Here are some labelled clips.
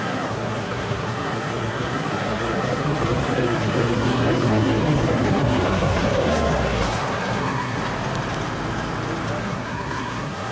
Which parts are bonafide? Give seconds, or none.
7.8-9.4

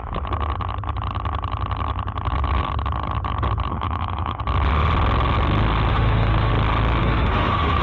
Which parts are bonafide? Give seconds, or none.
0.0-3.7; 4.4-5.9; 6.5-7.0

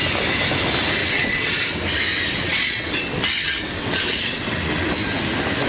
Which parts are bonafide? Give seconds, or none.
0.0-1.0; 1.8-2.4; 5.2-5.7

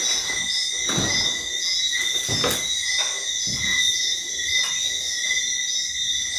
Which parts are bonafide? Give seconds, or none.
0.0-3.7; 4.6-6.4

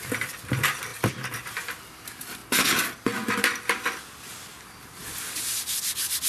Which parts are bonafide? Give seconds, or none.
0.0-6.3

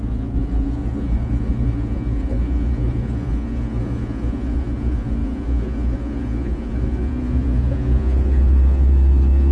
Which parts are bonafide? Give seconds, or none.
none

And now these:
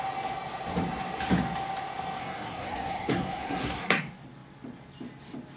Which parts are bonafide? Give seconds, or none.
0.0-2.2; 4.0-5.6